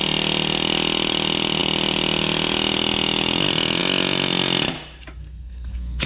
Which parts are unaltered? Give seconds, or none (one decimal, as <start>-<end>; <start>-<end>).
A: 0.0-5.2